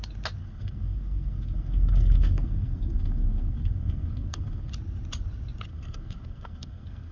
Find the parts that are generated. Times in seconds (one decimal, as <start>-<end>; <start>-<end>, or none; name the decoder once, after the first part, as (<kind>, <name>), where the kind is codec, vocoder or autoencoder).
0.4-4.7 (codec, SNAC); 5.7-7.1